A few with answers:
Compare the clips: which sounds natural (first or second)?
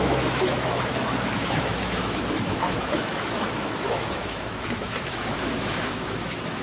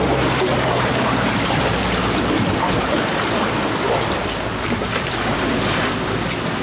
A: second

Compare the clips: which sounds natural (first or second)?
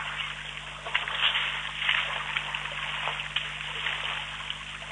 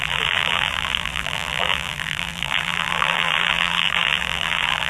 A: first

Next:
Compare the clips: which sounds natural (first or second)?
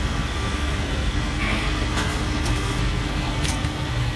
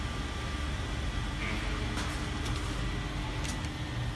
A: second